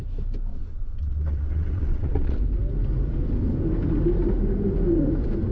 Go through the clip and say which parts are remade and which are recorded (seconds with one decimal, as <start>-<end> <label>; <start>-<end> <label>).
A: 0.0-0.5 recorded; 0.5-2.4 remade; 2.4-5.5 recorded